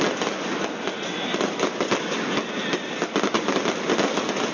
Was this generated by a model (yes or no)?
no